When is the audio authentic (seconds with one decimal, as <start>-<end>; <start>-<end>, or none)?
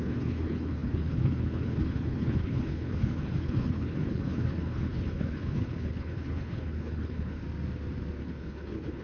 7.4-8.2